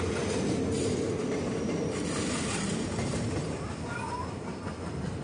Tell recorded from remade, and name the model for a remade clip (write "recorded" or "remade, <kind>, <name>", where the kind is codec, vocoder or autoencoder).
recorded